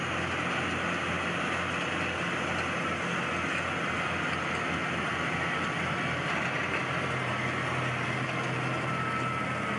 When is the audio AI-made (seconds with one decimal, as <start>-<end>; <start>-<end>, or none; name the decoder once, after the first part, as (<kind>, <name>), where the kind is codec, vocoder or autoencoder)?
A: none